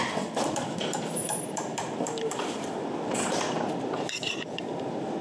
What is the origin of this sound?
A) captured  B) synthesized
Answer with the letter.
B